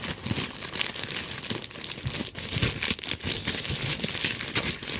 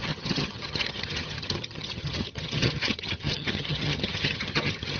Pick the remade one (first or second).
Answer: second